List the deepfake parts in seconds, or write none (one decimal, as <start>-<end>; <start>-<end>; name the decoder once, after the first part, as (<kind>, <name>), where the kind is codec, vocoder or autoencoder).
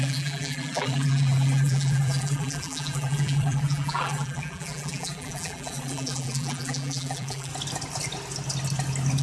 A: 0.0-7.5 (vocoder, BigVGAN v2)